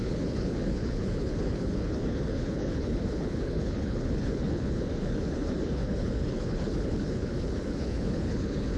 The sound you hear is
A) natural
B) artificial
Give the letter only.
B